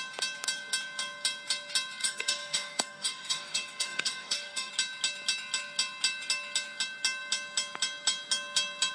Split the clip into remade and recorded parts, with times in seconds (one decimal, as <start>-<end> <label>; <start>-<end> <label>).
0.0-2.0 recorded; 2.0-4.7 remade; 4.7-8.9 recorded